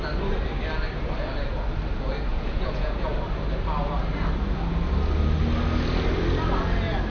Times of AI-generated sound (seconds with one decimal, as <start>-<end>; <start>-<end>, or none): 2.3-3.1